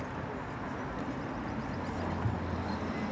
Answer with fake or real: real